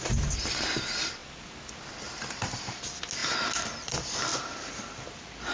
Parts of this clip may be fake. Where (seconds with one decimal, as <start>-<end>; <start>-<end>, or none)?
1.2-2.5; 4.3-4.8